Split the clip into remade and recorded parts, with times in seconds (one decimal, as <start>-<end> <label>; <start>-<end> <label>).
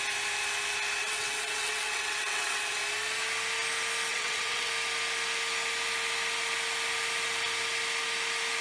0.0-1.0 recorded; 1.0-2.8 remade; 2.8-4.1 recorded; 4.1-4.7 remade; 4.7-8.6 recorded